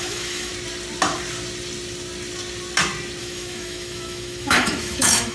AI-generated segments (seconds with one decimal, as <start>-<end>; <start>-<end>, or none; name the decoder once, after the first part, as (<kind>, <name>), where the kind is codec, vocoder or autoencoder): 0.0-0.5 (autoencoder, DAC-VAE); 3.2-5.3